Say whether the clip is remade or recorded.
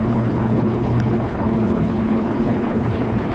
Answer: remade